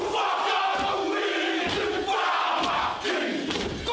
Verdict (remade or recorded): recorded